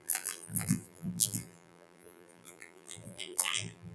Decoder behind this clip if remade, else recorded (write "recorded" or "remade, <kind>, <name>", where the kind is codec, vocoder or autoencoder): remade, vocoder, BigVGAN v2